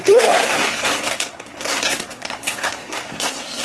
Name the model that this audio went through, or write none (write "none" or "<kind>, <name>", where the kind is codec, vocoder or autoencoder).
codec, SNAC